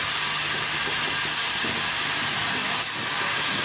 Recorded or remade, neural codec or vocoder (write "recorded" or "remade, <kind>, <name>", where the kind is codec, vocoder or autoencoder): recorded